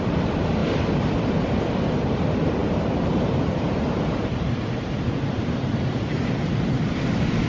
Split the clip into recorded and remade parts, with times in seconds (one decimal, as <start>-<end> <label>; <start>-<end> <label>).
0.0-0.6 recorded; 0.6-1.6 remade; 1.6-2.6 recorded; 2.6-6.8 remade; 6.8-7.5 recorded